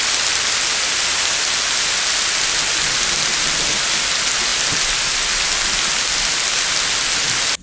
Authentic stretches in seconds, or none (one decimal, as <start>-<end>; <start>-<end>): 0.0-7.6

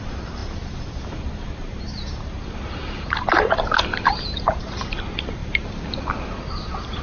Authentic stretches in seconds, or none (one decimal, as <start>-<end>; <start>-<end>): 5.4-6.5

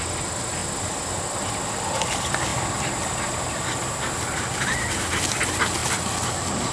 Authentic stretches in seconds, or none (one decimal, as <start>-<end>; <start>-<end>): 0.0-0.6; 1.2-6.7

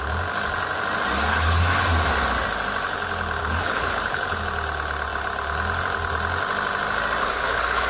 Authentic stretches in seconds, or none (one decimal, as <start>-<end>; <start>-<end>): 0.0-1.3; 1.9-3.4; 4.4-7.2

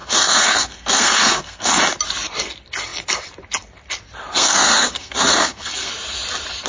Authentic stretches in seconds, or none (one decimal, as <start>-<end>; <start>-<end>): 1.8-4.3; 5.9-6.7